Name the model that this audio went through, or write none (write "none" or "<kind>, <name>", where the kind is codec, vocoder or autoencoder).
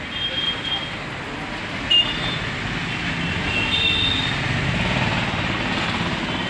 none